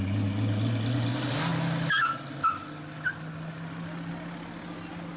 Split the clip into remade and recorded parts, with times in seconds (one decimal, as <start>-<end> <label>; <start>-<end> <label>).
0.0-5.2 recorded